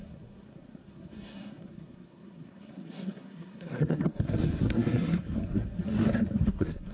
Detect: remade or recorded remade